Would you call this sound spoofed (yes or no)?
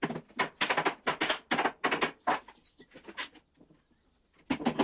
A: no